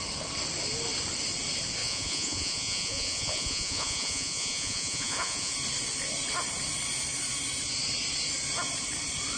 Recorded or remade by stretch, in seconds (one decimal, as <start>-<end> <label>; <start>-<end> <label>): 0.0-1.8 recorded; 1.8-5.5 remade; 5.5-9.4 recorded